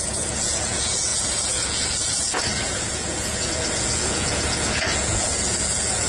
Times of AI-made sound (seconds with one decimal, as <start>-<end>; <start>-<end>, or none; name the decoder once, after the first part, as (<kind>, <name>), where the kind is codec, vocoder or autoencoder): 0.0-6.1 (vocoder, Vocos)